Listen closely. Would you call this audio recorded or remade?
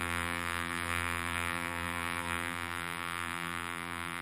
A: remade